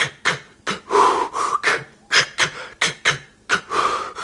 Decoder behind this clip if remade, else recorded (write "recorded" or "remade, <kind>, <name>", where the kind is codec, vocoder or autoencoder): recorded